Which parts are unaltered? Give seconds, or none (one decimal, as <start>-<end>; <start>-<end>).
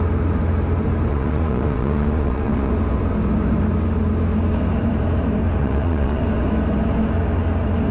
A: 0.0-1.1; 2.7-5.6; 6.2-7.9